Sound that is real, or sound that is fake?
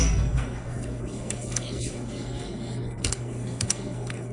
fake